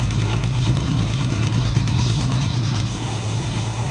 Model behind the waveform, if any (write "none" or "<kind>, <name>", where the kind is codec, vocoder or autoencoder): codec, SNAC